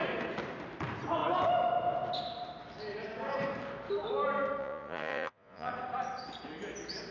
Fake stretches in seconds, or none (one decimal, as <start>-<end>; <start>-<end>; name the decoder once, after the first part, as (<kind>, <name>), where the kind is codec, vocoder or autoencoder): 4.6-5.7 (vocoder, Vocos)